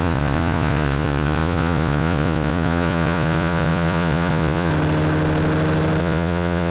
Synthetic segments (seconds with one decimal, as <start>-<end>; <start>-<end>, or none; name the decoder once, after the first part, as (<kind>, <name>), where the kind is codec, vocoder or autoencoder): 0.0-4.7 (vocoder, Vocos); 6.0-6.7